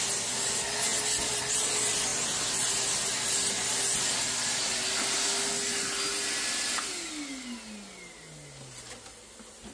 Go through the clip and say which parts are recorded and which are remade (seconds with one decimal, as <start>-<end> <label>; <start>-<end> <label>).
0.0-9.7 recorded